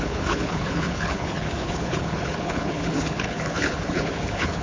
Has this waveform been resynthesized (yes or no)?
yes